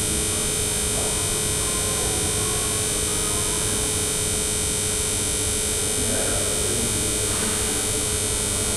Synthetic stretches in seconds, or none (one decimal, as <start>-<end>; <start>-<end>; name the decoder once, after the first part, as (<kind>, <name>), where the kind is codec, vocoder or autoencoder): none